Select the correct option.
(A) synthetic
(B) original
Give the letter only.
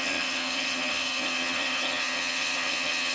A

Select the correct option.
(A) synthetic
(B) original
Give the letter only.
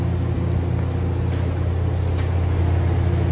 B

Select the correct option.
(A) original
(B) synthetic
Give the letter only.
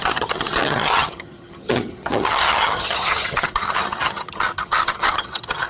B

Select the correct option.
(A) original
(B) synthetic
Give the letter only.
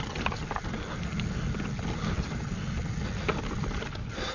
A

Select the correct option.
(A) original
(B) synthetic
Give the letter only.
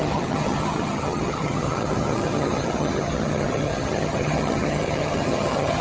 B